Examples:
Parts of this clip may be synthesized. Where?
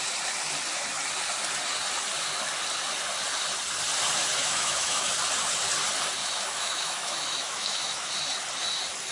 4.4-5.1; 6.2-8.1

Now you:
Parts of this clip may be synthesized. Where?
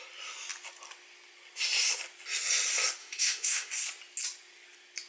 3.0-3.7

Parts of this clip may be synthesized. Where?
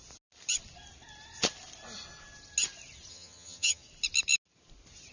3.1-3.8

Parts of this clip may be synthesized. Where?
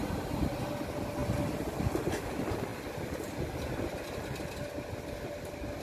0.0-0.6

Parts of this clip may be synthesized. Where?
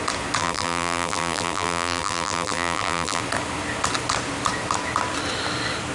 0.4-3.2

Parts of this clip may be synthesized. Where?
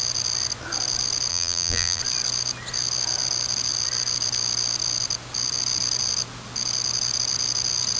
1.3-2.0